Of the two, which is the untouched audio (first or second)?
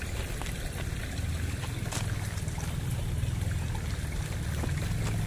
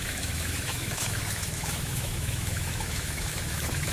first